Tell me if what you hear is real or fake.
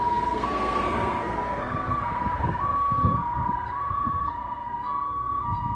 fake